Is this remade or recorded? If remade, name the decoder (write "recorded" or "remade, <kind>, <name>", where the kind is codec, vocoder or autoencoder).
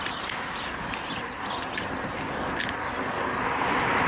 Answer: recorded